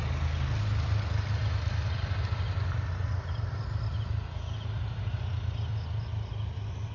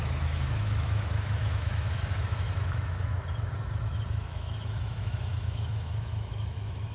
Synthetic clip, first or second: second